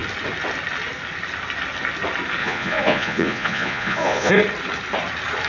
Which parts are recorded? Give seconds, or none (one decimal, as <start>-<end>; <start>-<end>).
0.0-2.4; 4.3-5.5